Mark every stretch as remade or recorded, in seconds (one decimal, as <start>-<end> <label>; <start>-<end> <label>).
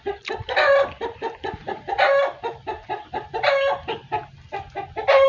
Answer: 0.0-5.3 recorded